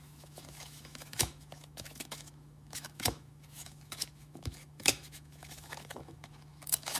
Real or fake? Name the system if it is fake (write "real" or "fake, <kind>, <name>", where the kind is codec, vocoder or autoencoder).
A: fake, autoencoder, DAC-VAE